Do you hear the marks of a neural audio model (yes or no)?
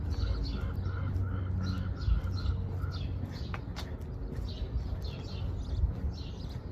no